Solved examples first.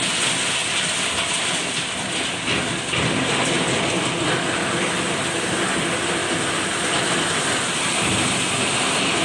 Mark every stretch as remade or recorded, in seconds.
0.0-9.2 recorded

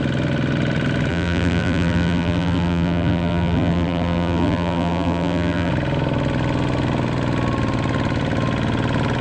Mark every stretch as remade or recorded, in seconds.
0.0-1.1 recorded; 1.1-5.7 remade; 5.7-9.2 recorded

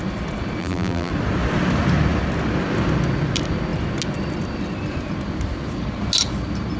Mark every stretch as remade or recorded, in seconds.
0.0-0.6 recorded; 0.6-1.1 remade; 1.1-6.8 recorded

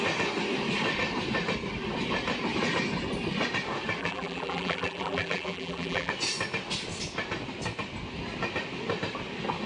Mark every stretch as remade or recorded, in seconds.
0.0-4.0 recorded; 4.0-6.1 remade; 6.1-9.7 recorded

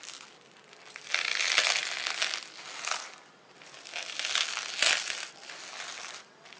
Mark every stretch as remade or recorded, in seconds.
0.0-6.6 recorded

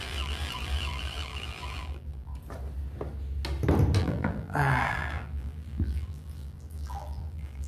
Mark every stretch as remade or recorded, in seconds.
0.0-2.3 remade; 2.3-4.0 recorded; 4.0-7.7 remade